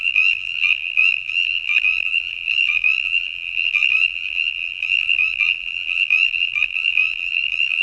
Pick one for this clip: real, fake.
fake